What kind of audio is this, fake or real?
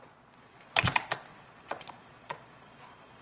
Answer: fake